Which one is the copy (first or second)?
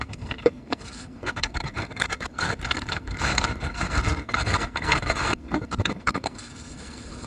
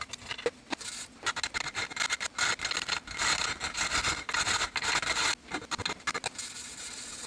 first